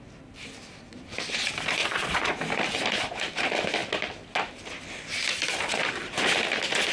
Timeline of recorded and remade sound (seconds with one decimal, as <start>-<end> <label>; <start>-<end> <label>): 0.0-1.8 recorded; 1.8-2.3 remade; 2.3-6.9 recorded